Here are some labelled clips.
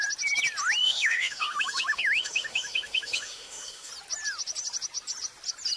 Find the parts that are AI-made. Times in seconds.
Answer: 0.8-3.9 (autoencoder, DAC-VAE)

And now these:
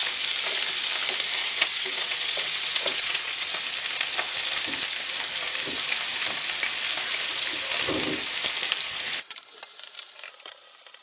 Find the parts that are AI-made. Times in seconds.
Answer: 1.4-3.6 (vocoder, WaveNeXt)

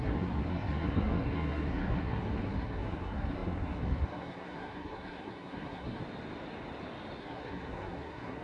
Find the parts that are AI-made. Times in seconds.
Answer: 0.0-6.0 (codec, SNAC); 7.2-8.4